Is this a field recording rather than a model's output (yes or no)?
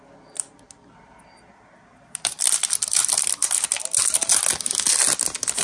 yes